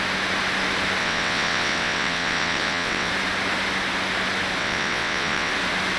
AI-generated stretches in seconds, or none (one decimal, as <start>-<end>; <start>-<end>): 1.0-3.1; 4.6-5.5